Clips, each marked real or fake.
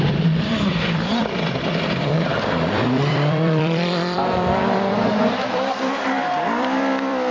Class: fake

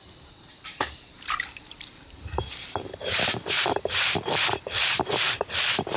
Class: fake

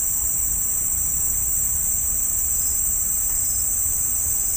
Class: fake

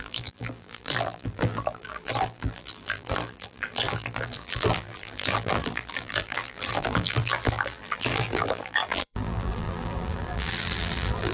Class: fake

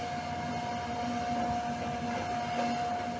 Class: real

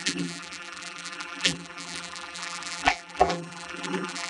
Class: fake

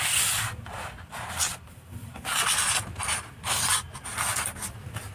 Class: fake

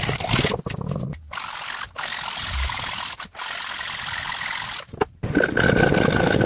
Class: real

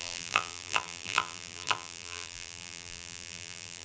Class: fake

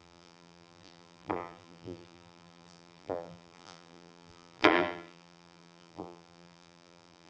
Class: fake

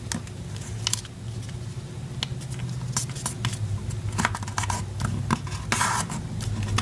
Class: real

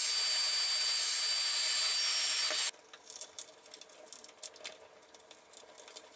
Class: real